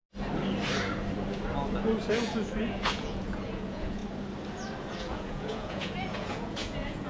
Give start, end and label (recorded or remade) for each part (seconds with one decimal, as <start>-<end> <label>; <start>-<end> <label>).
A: 0.0-2.1 recorded; 2.1-4.0 remade; 4.0-4.9 recorded; 4.9-7.1 remade